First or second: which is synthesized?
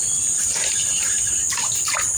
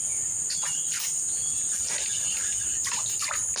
first